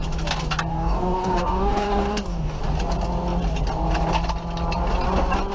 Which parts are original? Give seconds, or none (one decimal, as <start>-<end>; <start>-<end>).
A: 0.0-0.7; 2.6-5.5